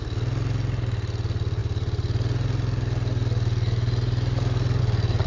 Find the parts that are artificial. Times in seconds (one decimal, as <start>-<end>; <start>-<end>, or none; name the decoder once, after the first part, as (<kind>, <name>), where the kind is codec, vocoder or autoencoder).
none